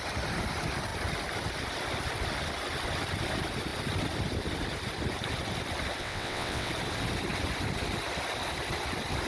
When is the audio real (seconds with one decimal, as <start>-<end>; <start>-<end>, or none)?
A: 0.0-6.0; 6.7-9.3